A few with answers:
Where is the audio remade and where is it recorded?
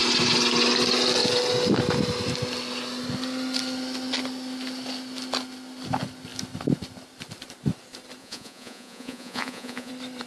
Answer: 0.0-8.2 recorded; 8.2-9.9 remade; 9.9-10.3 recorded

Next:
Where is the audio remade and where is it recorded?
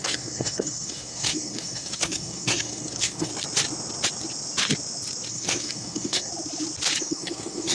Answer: 0.0-3.3 remade; 3.3-5.3 recorded; 5.3-6.3 remade; 6.3-7.0 recorded; 7.0-7.7 remade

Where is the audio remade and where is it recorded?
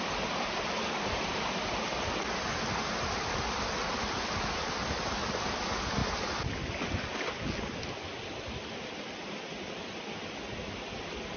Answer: 0.0-11.4 recorded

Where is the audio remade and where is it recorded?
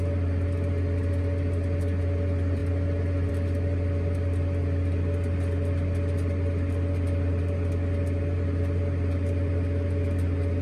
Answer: 0.0-10.6 recorded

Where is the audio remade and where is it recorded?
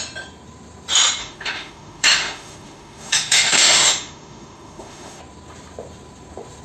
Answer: 0.0-1.2 recorded; 1.2-5.2 remade; 5.2-6.6 recorded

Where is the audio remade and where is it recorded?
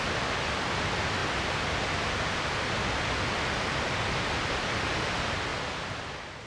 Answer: 0.0-6.5 recorded